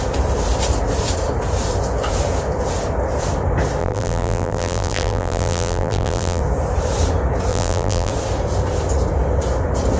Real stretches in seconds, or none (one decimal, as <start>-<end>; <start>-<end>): 0.0-3.8; 6.4-7.5; 8.1-10.0

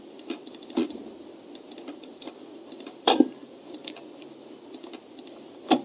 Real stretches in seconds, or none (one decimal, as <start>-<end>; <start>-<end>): 1.0-1.9; 3.8-5.3